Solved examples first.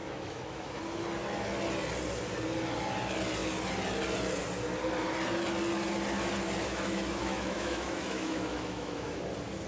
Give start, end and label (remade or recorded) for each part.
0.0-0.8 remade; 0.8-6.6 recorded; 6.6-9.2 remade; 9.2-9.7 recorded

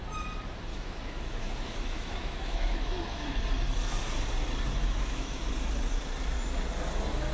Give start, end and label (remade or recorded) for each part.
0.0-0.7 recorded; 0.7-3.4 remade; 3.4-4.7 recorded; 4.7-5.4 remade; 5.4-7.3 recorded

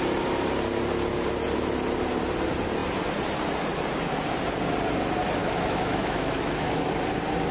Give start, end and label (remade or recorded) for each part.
0.0-5.4 recorded; 5.4-6.9 remade; 6.9-7.5 recorded

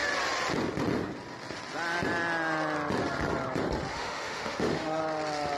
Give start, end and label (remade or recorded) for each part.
0.0-3.9 recorded; 3.9-5.0 remade; 5.0-5.6 recorded

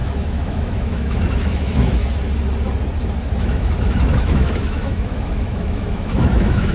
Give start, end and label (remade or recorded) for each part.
0.0-2.0 remade; 2.0-3.4 recorded; 3.4-6.7 remade

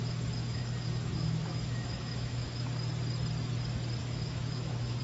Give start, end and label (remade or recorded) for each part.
0.0-0.4 recorded; 0.4-2.7 remade; 2.7-4.0 recorded; 4.0-5.0 remade